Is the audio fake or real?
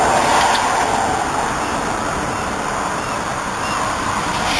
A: real